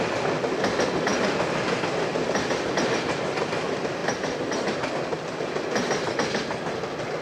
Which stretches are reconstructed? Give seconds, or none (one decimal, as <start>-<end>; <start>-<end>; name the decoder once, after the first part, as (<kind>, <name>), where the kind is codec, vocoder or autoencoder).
none